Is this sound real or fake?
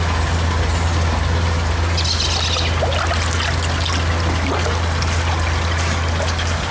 real